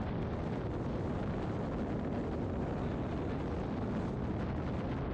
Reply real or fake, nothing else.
real